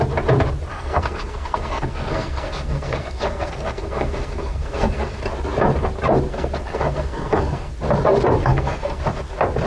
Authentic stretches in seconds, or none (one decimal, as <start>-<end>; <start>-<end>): 0.0-0.7; 5.2-6.3; 7.7-8.4; 9.0-9.7